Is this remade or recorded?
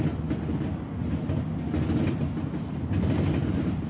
recorded